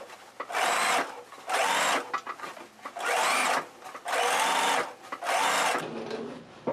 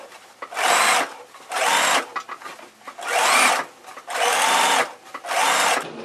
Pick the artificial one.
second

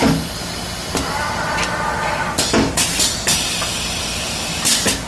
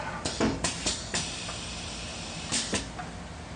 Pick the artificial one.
second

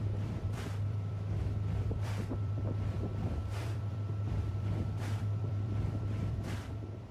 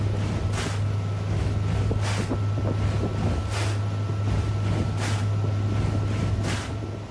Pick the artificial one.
first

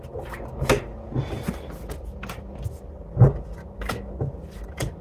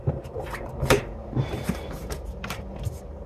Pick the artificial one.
second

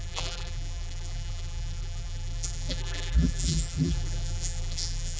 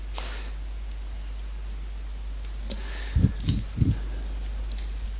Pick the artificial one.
first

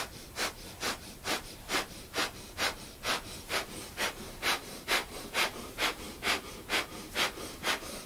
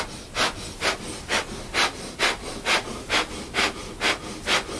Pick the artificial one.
first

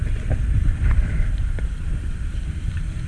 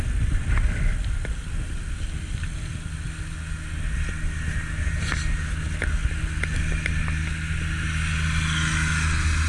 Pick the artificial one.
first